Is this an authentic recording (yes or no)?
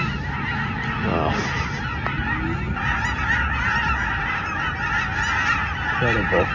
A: yes